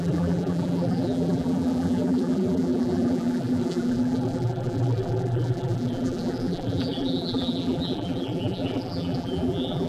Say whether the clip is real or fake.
fake